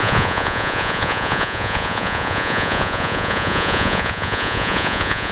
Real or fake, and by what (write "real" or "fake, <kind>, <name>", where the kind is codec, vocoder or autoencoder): fake, vocoder, Vocos